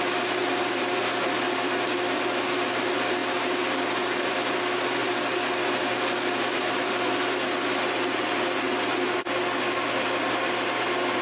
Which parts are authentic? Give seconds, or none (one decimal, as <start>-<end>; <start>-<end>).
0.0-11.2